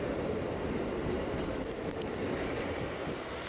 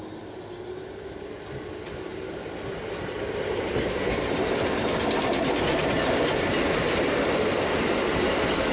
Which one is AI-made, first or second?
first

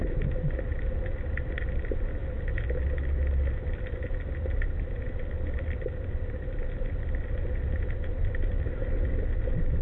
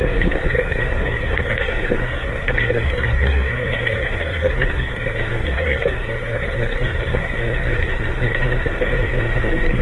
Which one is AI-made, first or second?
second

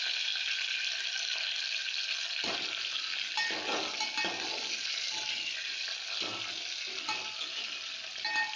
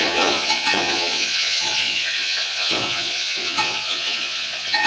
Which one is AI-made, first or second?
second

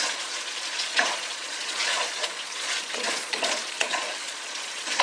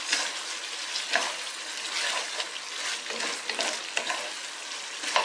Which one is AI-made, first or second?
first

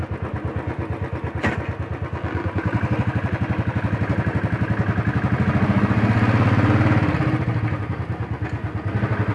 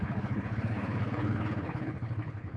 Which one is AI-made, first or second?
second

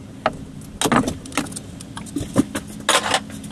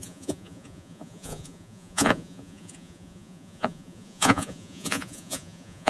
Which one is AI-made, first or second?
second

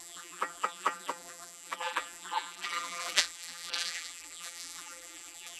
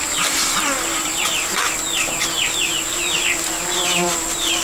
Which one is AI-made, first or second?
first